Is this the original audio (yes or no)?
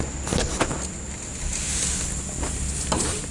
yes